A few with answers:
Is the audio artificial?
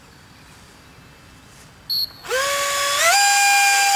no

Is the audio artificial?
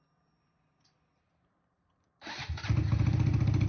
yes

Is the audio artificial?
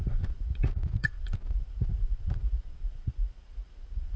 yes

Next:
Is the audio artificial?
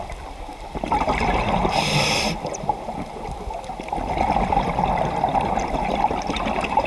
yes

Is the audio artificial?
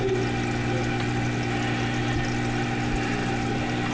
no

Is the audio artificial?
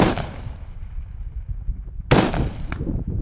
no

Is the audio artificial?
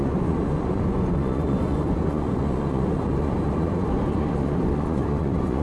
yes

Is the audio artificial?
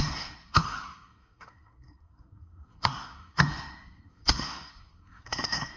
yes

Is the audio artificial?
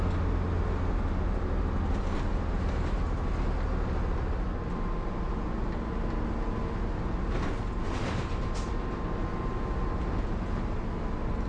no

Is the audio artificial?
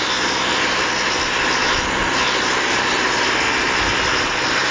no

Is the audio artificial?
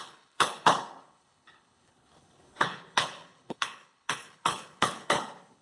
yes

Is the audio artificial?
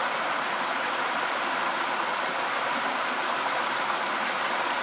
no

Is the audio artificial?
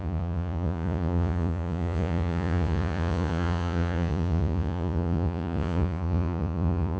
yes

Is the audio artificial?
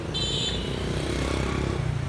yes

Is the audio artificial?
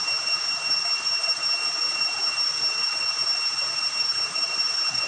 no